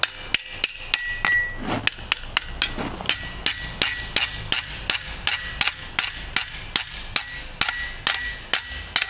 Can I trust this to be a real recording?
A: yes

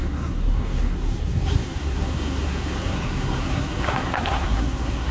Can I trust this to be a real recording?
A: no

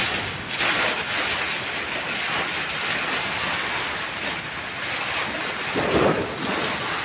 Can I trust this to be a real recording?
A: yes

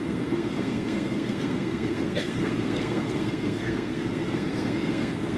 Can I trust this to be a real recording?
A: no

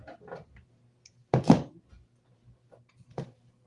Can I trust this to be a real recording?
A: yes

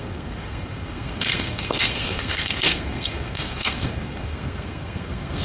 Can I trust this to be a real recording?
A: no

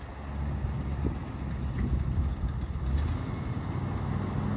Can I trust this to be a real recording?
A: yes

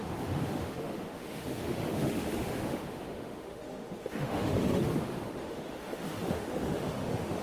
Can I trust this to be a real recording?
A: no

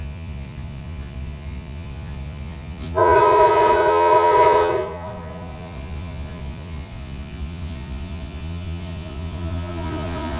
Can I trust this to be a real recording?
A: no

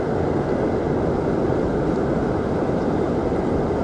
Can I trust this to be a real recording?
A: yes